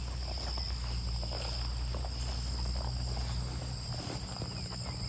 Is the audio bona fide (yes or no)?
yes